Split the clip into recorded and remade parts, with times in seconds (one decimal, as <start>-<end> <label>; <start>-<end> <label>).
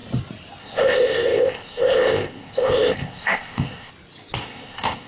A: 0.0-0.6 recorded; 0.6-3.9 remade; 3.9-4.4 recorded; 4.4-5.1 remade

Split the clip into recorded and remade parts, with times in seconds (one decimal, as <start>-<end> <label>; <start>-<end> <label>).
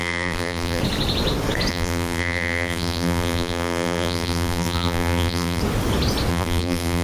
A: 0.0-0.8 remade; 0.8-1.7 recorded; 1.7-5.6 remade; 5.6-6.3 recorded; 6.3-7.0 remade